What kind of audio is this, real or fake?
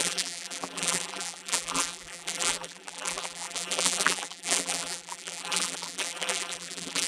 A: fake